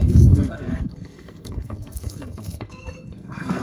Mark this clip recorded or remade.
remade